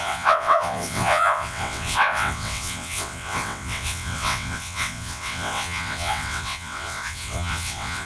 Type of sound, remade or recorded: remade